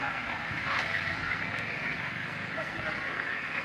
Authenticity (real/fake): fake